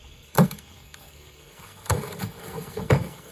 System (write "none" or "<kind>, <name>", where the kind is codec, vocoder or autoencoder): codec, SNAC